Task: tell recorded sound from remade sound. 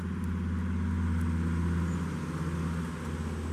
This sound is recorded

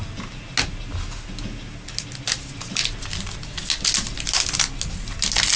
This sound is recorded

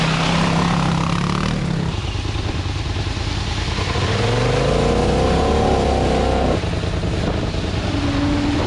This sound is recorded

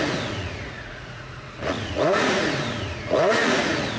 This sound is remade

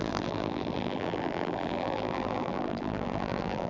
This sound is remade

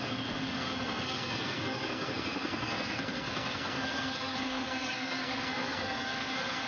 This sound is remade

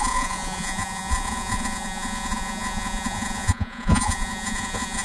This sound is remade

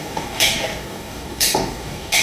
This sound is remade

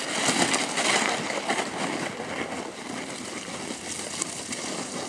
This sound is recorded